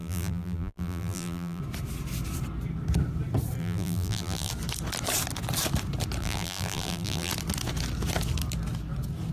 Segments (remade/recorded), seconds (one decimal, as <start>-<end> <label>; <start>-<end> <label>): 0.0-1.6 remade; 1.6-3.6 recorded; 3.6-4.5 remade; 4.5-6.2 recorded; 6.2-7.3 remade; 7.3-9.3 recorded

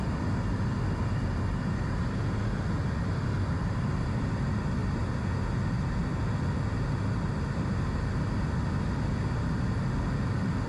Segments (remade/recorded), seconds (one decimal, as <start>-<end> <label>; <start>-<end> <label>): 0.0-10.7 recorded

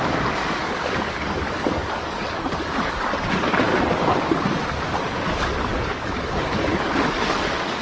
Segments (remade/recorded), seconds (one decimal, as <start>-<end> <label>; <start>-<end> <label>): 0.0-3.7 remade; 3.7-5.2 recorded; 5.2-7.8 remade